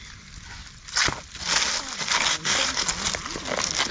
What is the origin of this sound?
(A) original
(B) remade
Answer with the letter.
A